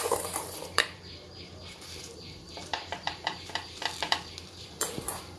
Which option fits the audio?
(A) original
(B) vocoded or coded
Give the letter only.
B